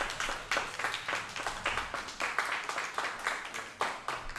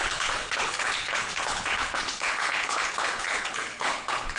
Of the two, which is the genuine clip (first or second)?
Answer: first